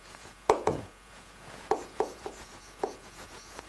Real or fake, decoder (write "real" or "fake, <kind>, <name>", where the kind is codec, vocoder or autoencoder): fake, vocoder, Vocos